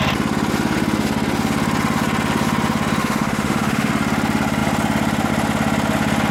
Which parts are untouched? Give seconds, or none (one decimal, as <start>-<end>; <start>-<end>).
0.0-3.0; 3.9-6.3